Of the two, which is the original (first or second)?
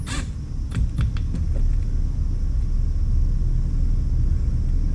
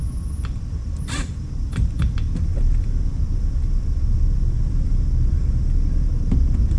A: first